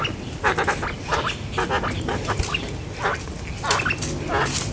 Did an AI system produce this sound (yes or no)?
no